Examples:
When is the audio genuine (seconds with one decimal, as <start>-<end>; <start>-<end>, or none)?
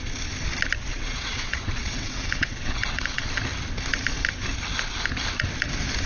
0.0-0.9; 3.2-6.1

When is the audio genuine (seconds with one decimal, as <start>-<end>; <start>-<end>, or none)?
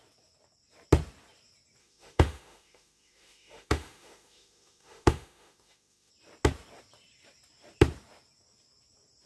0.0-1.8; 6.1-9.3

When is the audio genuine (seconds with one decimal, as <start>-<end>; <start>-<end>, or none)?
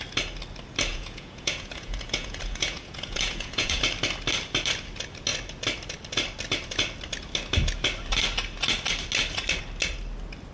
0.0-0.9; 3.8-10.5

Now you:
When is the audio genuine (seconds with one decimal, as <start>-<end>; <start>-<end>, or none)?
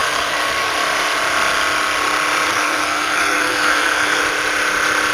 0.7-2.5; 4.2-5.1